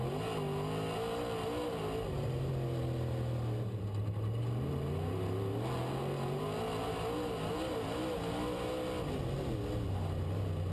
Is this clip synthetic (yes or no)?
no